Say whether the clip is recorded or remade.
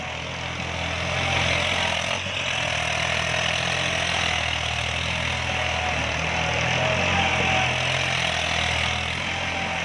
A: recorded